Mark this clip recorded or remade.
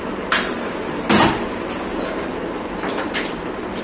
recorded